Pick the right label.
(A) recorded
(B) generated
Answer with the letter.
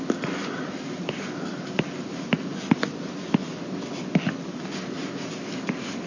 A